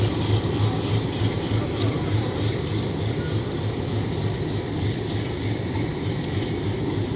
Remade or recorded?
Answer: recorded